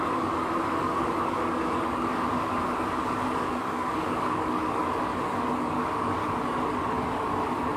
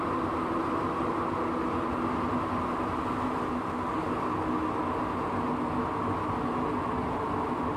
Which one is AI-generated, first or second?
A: first